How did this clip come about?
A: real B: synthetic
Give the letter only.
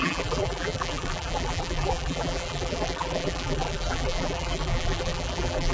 B